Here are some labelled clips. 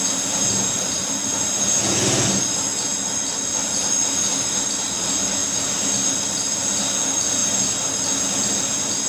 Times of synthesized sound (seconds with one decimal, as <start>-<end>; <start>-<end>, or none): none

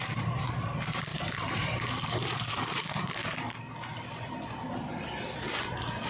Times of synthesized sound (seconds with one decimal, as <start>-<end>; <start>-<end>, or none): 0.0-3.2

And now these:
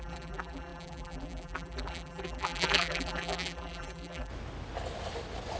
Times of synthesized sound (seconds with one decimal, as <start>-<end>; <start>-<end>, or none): 0.0-4.3

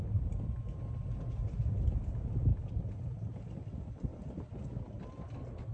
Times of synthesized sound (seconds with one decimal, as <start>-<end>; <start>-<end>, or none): 4.1-4.7

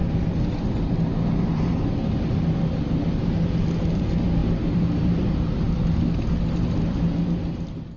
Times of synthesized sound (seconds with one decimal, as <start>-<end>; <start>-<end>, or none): 0.0-0.8; 4.4-5.5